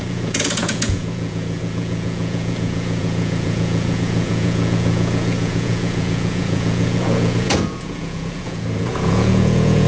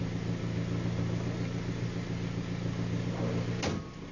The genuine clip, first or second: second